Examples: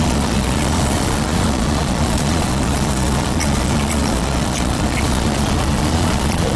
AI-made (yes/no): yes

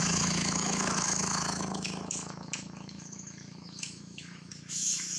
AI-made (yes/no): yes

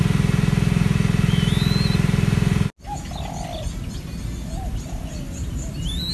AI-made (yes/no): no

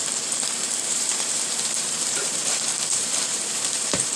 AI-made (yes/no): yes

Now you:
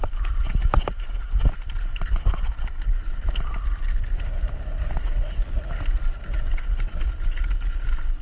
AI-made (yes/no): no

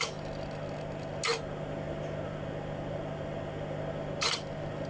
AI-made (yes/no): no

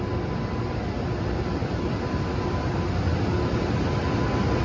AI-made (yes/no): no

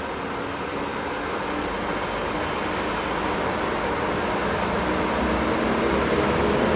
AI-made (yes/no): no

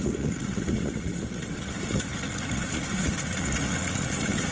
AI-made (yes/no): yes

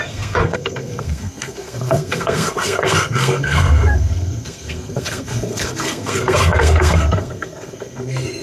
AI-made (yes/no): yes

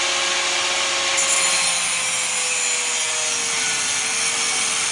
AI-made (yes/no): no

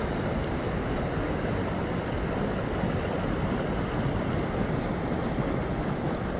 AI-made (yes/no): no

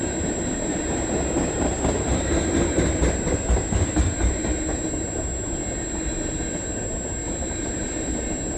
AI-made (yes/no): no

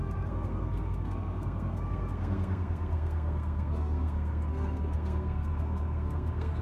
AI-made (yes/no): yes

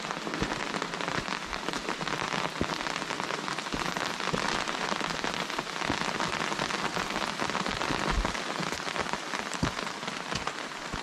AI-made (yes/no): no